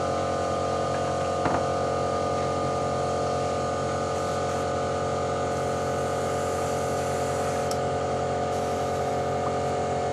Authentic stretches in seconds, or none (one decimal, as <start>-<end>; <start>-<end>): 0.0-7.6; 9.1-10.1